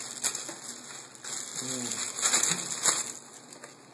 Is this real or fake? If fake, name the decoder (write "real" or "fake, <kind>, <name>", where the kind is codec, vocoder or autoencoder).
real